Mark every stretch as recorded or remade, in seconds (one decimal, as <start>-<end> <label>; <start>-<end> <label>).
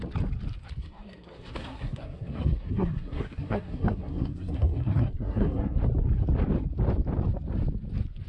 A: 0.0-0.8 recorded; 0.8-5.8 remade; 5.8-8.3 recorded